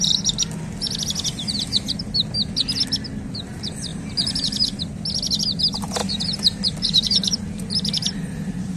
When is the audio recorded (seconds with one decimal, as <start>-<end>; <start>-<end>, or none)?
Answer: 0.0-3.9; 4.8-6.0; 7.5-8.8